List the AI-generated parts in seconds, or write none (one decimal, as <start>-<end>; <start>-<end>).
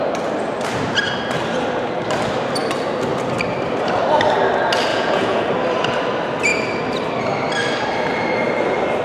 4.9-5.4